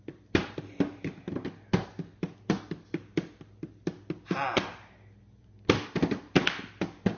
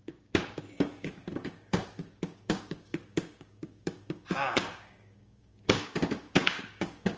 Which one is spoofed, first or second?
second